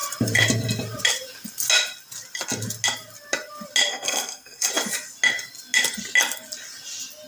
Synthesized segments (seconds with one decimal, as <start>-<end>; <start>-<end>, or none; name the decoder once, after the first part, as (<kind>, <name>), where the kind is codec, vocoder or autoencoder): 3.9-4.7 (codec, SNAC)